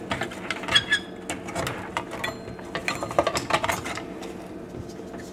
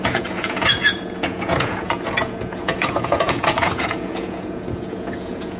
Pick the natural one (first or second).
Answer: first